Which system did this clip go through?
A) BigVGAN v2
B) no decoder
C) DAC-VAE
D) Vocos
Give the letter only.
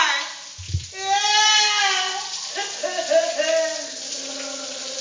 B